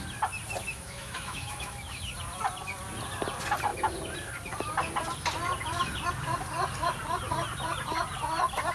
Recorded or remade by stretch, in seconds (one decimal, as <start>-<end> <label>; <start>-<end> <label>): 0.0-0.6 recorded; 0.6-2.0 remade; 2.0-8.7 recorded